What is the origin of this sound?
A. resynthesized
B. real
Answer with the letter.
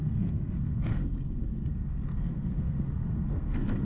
A